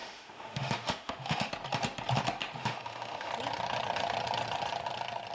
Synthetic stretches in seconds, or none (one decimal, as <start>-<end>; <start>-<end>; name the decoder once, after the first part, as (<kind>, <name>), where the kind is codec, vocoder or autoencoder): 0.0-1.5 (autoencoder, DAC-VAE); 2.6-3.3